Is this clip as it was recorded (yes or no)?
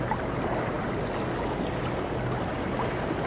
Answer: yes